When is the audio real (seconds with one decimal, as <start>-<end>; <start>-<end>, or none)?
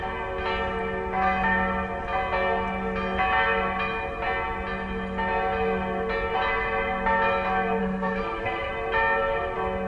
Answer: 0.0-7.8; 8.7-9.9